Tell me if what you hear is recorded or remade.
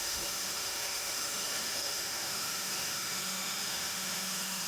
remade